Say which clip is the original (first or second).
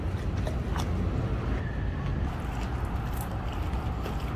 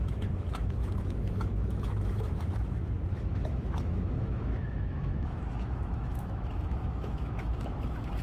first